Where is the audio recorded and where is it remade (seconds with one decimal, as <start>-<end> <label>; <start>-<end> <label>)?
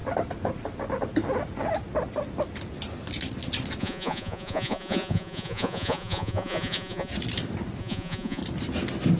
0.0-3.8 recorded; 3.8-7.1 remade; 7.1-7.8 recorded; 7.8-8.4 remade; 8.4-9.2 recorded